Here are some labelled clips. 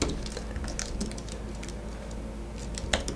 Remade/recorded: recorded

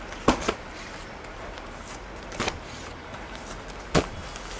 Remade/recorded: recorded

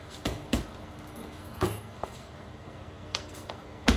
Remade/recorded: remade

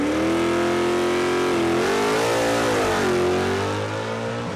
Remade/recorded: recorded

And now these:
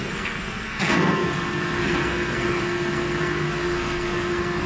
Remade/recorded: remade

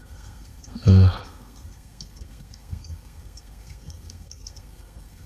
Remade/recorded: remade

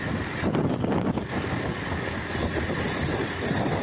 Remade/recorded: recorded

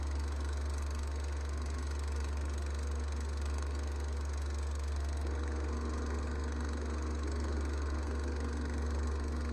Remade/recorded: remade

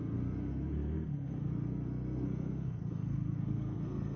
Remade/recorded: remade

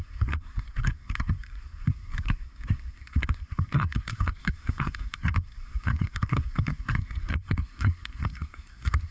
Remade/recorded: remade